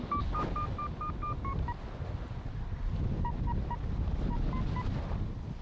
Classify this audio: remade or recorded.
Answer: recorded